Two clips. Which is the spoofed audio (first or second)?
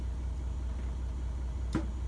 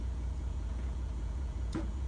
second